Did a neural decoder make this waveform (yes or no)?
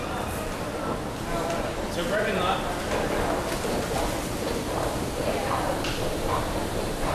no